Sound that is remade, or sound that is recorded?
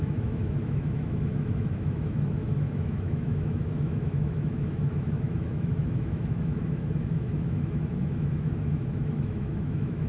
remade